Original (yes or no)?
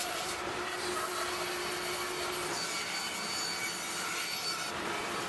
yes